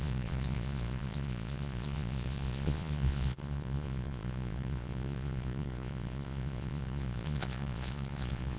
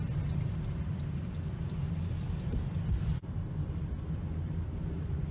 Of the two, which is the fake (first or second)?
first